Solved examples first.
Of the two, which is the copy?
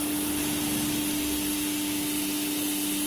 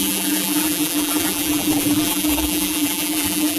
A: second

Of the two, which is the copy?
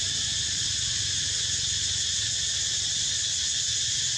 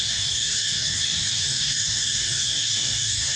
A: second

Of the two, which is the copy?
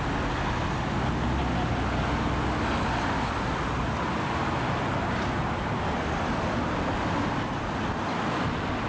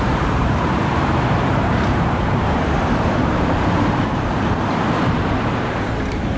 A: second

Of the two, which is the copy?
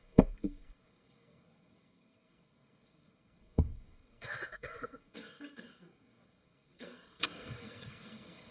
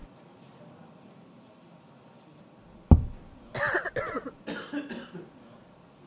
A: first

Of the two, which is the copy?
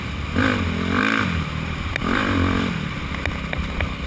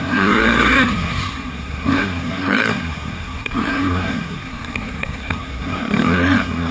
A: second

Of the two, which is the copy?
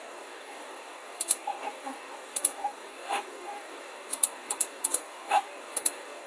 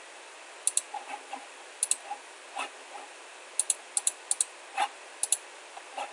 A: first